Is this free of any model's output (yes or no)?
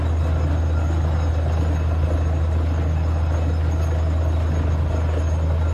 yes